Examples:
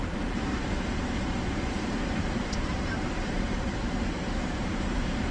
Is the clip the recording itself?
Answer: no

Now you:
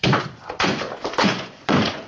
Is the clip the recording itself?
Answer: no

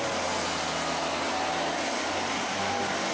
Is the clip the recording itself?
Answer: yes